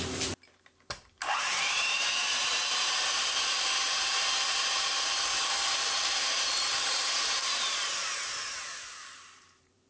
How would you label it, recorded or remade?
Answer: remade